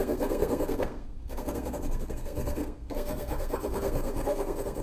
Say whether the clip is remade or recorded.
remade